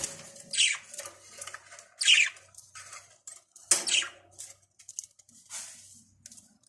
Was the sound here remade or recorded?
recorded